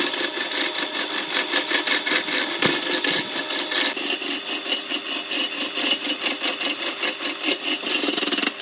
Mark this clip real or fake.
real